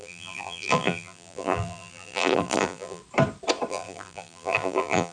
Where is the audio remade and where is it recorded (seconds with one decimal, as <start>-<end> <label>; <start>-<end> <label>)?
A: 0.0-3.0 remade; 3.0-3.7 recorded; 3.7-5.1 remade